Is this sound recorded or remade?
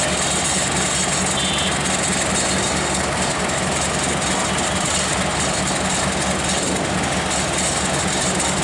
recorded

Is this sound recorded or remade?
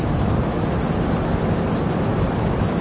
recorded